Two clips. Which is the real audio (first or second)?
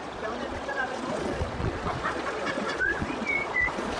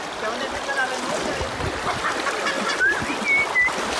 second